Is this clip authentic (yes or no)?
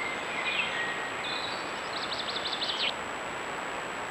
yes